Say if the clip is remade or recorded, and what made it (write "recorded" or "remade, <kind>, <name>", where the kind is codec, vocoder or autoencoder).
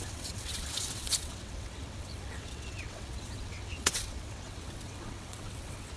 remade, vocoder, WaveNeXt